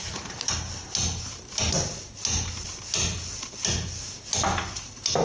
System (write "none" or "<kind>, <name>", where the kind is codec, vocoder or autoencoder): none